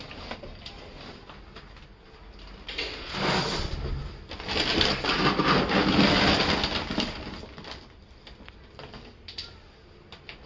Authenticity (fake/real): real